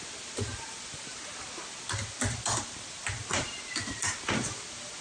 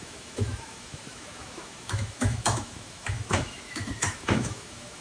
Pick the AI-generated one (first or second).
second